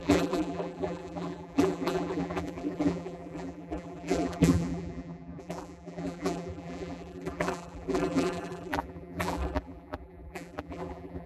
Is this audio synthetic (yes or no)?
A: yes